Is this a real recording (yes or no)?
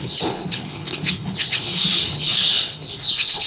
no